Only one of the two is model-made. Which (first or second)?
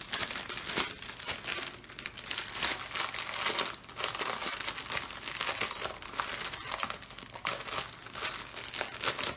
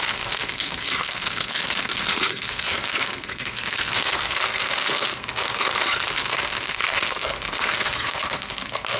second